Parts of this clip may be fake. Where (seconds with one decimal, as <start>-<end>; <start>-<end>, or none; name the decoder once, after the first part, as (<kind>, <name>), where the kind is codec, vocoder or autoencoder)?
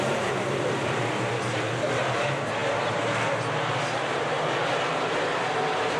0.0-6.0 (vocoder, BigVGAN v2)